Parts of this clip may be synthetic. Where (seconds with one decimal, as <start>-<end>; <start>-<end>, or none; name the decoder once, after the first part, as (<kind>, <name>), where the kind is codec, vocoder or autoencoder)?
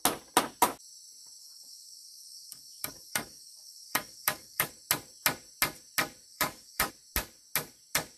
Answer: 1.4-4.7 (codec, DAC); 6.3-6.9